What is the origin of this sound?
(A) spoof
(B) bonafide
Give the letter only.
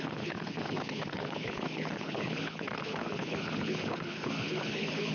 A